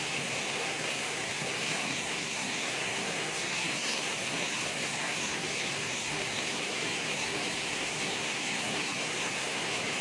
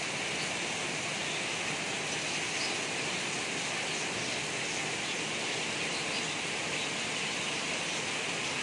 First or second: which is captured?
second